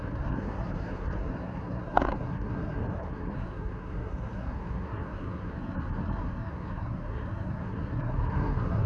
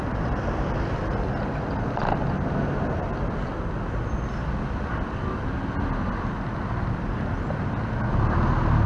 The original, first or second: second